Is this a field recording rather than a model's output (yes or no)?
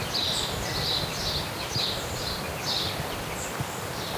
yes